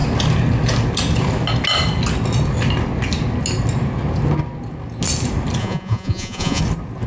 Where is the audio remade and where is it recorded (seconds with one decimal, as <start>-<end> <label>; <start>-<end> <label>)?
0.0-5.6 recorded; 5.6-6.6 remade; 6.6-7.1 recorded